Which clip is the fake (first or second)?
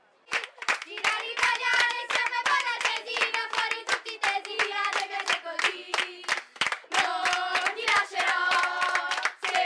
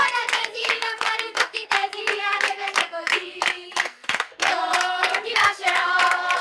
second